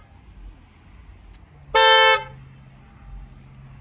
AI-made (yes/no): no